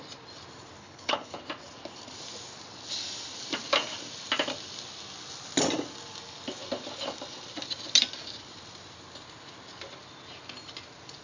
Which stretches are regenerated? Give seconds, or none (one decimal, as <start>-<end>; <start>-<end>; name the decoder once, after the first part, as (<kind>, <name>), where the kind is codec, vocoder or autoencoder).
0.8-1.4 (codec, HILCodec)